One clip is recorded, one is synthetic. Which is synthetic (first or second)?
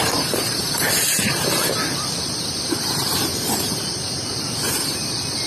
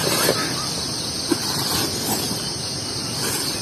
first